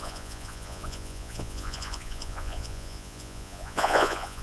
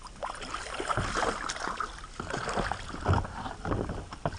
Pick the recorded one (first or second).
second